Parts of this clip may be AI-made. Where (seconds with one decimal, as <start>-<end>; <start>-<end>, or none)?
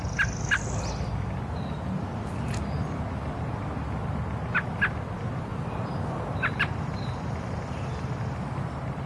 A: 5.5-8.1